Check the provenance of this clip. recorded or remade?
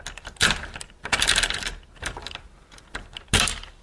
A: recorded